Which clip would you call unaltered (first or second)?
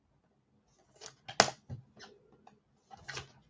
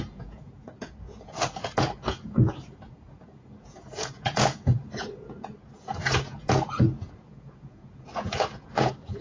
first